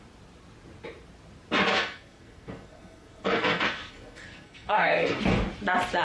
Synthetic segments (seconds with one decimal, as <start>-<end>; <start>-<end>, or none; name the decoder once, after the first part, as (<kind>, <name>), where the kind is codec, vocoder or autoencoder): 1.7-5.2 (codec, SNAC)